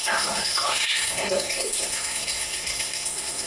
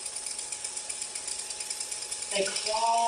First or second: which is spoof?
first